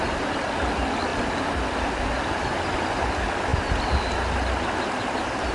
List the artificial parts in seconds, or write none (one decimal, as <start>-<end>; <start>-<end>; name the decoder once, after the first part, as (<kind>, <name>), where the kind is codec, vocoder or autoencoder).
none